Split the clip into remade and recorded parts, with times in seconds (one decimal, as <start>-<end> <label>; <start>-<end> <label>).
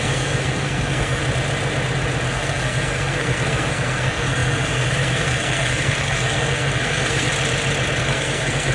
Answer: 0.0-1.2 remade; 1.2-2.3 recorded; 2.3-7.3 remade; 7.3-8.0 recorded; 8.0-8.7 remade